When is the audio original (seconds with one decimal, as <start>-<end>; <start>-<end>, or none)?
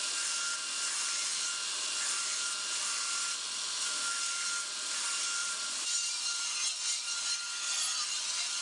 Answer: 0.0-5.4; 6.1-8.6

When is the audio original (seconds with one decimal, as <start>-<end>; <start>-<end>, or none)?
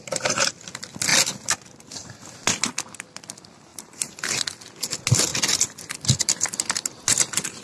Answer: 0.0-3.7; 4.2-7.6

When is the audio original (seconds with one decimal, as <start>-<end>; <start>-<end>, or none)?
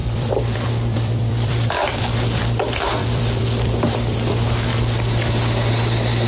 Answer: 2.0-3.0; 4.3-6.3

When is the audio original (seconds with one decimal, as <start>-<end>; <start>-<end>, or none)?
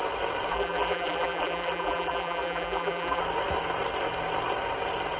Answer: 0.0-0.5; 3.2-5.2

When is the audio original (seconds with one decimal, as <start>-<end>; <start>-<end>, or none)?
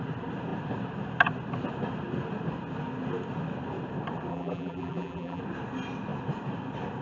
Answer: 0.0-4.3; 5.4-7.0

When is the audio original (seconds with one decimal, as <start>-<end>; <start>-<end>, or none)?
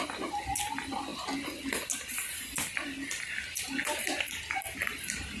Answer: 0.0-5.4